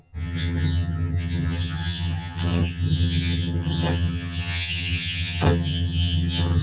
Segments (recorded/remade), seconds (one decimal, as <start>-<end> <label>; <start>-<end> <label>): 0.0-6.6 remade